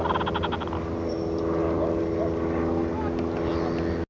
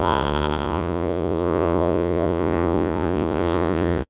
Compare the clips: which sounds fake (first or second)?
second